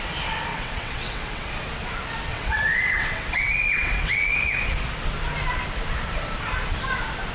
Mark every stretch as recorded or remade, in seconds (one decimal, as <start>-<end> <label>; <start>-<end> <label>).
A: 0.0-0.5 recorded; 0.5-1.5 remade; 1.5-2.3 recorded; 2.3-4.3 remade; 4.3-7.3 recorded